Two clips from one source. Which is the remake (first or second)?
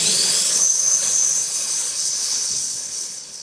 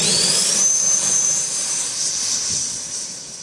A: first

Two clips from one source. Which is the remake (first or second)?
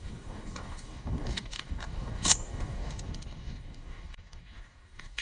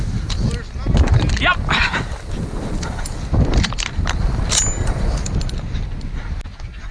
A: first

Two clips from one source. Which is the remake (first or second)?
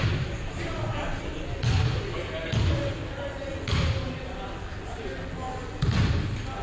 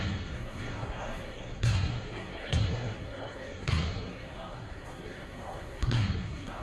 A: second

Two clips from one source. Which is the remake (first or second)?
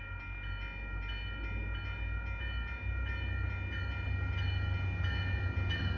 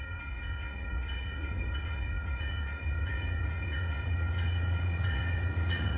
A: second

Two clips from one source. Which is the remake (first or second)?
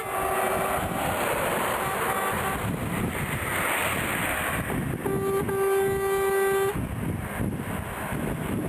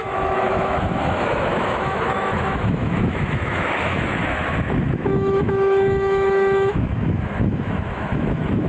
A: second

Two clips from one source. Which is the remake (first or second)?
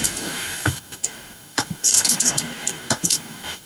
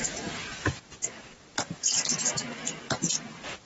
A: first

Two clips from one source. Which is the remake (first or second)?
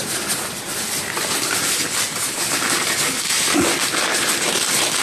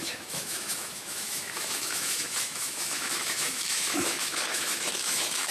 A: second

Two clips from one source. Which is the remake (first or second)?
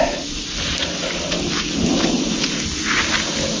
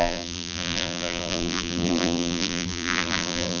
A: second